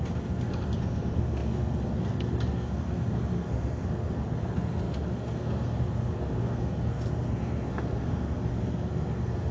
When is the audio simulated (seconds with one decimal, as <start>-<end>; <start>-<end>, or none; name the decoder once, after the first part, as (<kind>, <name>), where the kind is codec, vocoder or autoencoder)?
0.0-9.5 (codec, SNAC)